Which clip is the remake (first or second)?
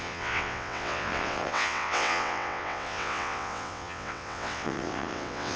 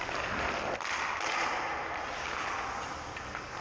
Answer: first